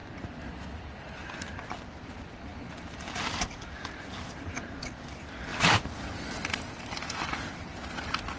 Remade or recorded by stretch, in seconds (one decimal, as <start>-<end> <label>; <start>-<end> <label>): 0.0-8.4 recorded